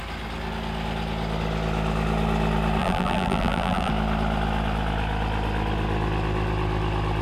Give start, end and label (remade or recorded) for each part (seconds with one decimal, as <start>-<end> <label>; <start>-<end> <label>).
0.0-2.8 recorded; 2.8-3.9 remade; 3.9-7.2 recorded